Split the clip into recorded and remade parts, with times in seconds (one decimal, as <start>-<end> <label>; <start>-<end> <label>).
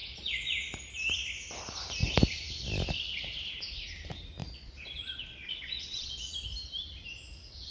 0.0-0.7 remade; 0.7-4.4 recorded; 4.4-6.3 remade; 6.3-7.7 recorded